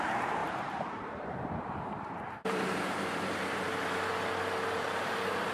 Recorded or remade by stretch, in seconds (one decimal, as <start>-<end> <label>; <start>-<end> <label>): 0.0-3.7 remade; 3.7-4.8 recorded; 4.8-5.5 remade